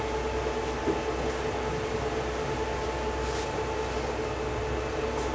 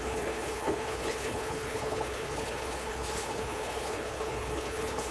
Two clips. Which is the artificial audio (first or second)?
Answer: second